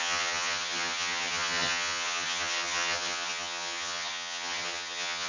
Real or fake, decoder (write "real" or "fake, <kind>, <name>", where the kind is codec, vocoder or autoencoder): fake, vocoder, HiFi-GAN